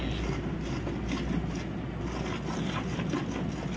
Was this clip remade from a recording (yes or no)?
no